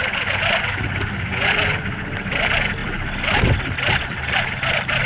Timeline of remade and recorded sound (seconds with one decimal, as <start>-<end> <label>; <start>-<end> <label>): 0.0-1.3 recorded; 1.3-1.8 remade; 1.8-5.1 recorded